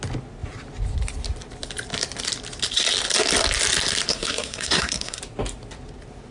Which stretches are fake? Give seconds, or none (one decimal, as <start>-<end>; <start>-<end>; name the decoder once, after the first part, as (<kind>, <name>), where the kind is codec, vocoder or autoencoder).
4.1-5.2 (codec, SNAC)